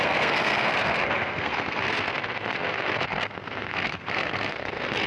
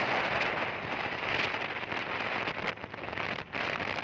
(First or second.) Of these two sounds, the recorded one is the second